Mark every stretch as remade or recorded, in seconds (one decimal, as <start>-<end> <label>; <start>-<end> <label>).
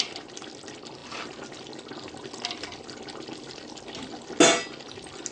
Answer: 0.0-5.3 recorded